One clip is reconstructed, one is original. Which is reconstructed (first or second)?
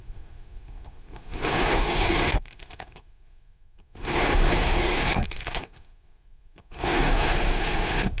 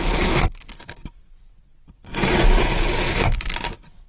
first